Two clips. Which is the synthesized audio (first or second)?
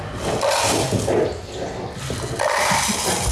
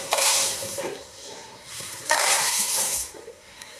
second